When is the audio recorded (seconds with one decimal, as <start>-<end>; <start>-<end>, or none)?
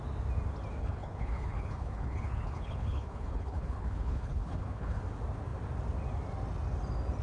0.0-0.8; 5.0-7.2